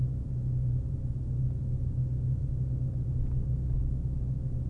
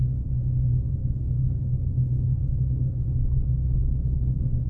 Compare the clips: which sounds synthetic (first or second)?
second